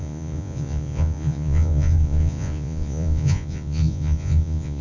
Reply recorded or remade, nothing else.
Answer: remade